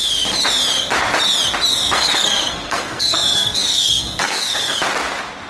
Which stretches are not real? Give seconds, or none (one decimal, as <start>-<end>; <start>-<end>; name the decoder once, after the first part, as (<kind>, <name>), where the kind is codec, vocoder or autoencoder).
1.7-4.8 (codec, SNAC)